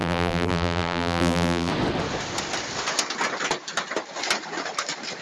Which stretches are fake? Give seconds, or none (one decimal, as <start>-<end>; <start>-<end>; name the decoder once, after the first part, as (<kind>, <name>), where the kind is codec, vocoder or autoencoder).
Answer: 0.0-1.7 (vocoder, BigVGAN v2)

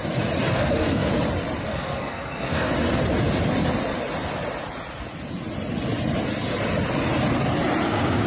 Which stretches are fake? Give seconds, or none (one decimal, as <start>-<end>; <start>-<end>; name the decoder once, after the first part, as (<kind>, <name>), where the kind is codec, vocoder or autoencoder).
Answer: 0.5-1.1 (codec, SNAC); 1.6-2.7

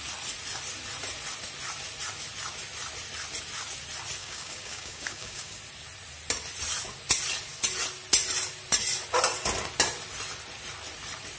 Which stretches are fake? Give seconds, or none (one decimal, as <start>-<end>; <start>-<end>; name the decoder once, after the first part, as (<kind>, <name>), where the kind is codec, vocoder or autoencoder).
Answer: 4.2-5.6 (codec, DAC)

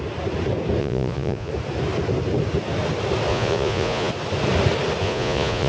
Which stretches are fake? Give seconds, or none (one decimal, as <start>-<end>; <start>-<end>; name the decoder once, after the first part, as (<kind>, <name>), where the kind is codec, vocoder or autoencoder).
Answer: 0.8-1.5 (vocoder, Vocos); 3.3-4.1; 5.0-5.7

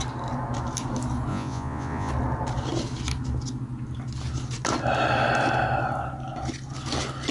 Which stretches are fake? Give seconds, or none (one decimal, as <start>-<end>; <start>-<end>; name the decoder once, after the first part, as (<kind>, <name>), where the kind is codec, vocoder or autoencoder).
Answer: 1.3-2.1 (vocoder, Vocos)

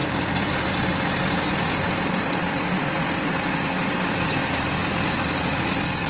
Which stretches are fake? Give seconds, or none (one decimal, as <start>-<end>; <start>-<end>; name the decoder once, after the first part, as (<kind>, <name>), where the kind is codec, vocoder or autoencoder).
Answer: none

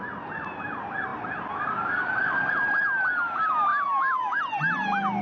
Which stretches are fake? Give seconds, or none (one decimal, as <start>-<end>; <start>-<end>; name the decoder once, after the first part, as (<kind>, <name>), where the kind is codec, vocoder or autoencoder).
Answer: 3.7-4.4 (autoencoder, DAC-VAE)

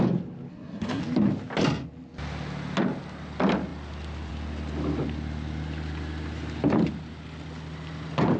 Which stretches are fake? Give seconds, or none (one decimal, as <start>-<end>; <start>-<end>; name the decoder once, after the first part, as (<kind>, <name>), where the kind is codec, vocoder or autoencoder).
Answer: 0.5-1.0 (codec, SNAC)